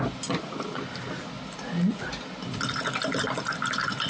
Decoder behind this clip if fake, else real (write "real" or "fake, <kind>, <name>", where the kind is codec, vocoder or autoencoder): real